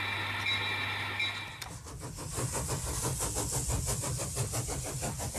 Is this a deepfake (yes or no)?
no